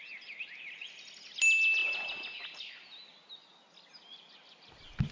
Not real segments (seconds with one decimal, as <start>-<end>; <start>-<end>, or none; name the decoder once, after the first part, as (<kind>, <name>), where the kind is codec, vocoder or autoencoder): none